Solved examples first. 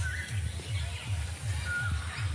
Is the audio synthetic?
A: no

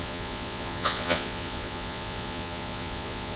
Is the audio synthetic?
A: yes